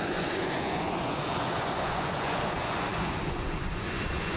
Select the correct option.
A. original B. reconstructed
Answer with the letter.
B